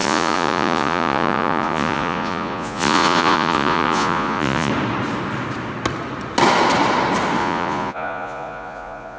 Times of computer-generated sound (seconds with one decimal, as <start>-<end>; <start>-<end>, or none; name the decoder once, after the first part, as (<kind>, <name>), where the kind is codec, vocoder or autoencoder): 0.0-4.7 (vocoder, Vocos); 7.4-9.2